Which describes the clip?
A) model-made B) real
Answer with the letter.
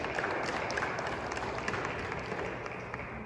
B